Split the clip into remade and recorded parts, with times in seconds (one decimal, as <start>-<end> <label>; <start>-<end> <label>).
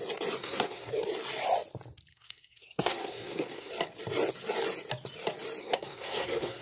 0.0-0.4 recorded; 0.4-0.9 remade; 0.9-2.1 recorded; 2.1-3.7 remade; 3.7-5.6 recorded; 5.6-6.6 remade